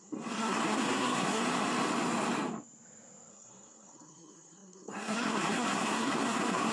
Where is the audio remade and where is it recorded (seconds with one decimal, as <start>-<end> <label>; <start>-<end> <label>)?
0.0-1.4 remade; 1.4-3.3 recorded; 3.3-6.7 remade